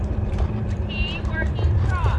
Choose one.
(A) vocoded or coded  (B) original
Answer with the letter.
A